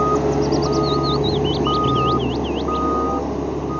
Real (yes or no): yes